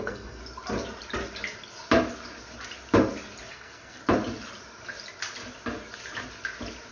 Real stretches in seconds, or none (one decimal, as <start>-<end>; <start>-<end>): 0.4-3.5; 4.0-6.9